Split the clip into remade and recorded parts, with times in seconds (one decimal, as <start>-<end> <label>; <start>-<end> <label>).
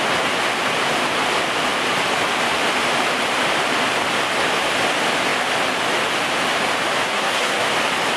0.0-7.1 recorded; 7.1-7.7 remade; 7.7-8.2 recorded